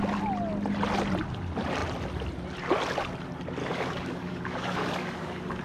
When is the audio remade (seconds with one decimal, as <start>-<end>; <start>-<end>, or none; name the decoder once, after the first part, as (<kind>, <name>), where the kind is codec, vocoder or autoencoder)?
3.6-5.6 (codec, DAC)

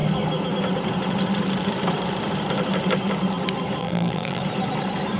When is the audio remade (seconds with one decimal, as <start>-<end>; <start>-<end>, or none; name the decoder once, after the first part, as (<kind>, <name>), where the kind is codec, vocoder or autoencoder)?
3.8-4.4 (vocoder, BigVGAN v2)

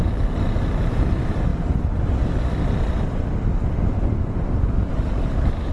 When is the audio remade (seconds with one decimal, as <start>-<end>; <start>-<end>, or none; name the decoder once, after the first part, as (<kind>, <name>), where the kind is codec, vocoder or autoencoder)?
none

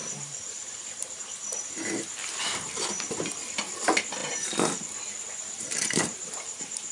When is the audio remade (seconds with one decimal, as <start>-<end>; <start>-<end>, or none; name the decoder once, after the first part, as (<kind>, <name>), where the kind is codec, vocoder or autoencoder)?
0.0-1.2 (vocoder, BigVGAN v2); 2.5-3.1; 4.2-4.8; 5.4-6.9

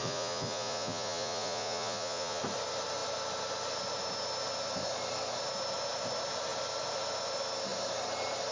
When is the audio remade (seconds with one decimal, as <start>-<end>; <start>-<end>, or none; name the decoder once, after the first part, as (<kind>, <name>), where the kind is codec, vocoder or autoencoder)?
0.0-2.4 (vocoder, Vocos)

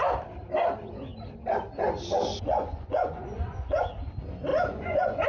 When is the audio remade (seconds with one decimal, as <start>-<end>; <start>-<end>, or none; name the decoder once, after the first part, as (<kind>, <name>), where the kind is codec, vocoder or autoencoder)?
2.3-3.8 (vocoder, Vocos); 4.5-5.3

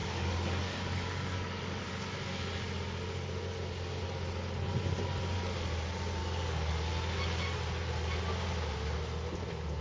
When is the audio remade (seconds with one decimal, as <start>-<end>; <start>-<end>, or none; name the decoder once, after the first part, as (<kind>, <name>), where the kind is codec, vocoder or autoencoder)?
0.0-1.8 (codec, DAC); 6.2-6.9